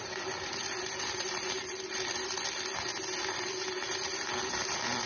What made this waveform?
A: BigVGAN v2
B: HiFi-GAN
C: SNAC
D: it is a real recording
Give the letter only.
A